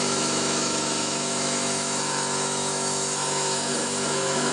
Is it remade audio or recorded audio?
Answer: remade